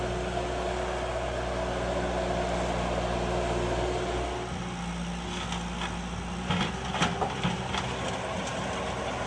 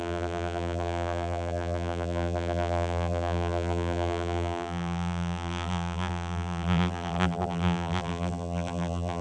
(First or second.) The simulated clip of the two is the second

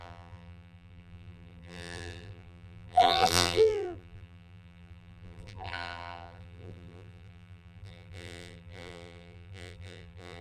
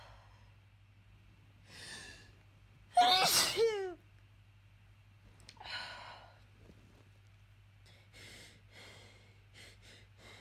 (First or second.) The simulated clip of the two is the first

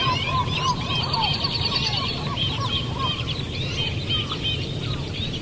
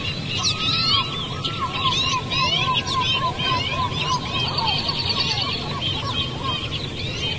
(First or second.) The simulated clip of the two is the first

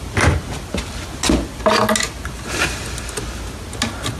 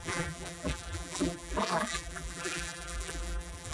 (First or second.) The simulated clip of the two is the second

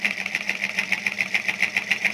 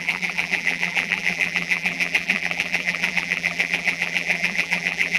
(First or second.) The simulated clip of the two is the second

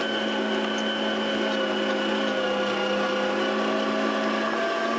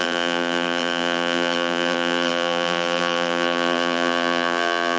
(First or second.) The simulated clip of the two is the second